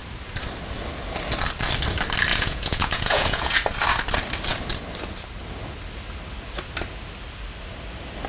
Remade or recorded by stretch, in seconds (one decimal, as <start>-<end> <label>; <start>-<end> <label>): 0.0-2.3 recorded; 2.3-3.5 remade; 3.5-8.3 recorded